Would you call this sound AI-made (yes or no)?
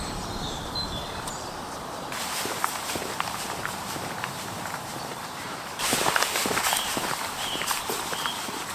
yes